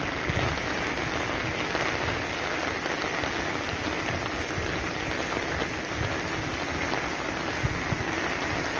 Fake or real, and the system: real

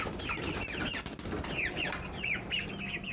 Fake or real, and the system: real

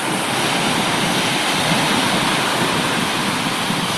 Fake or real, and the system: real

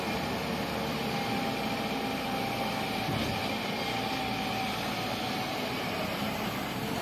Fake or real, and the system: real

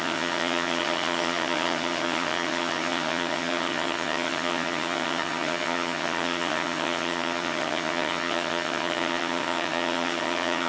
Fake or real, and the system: fake, vocoder, HiFi-GAN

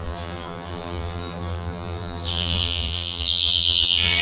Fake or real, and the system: fake, vocoder, BigVGAN v2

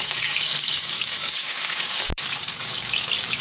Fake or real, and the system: fake, codec, DAC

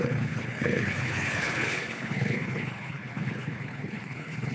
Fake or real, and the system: fake, codec, HILCodec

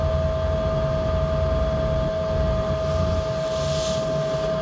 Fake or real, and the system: real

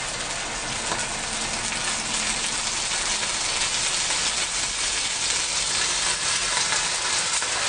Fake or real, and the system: real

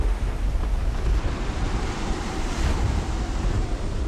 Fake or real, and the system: real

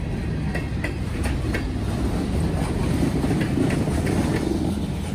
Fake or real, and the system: real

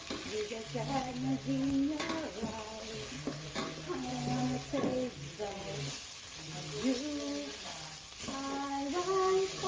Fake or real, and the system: real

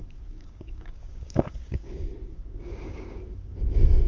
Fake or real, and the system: fake, codec, DAC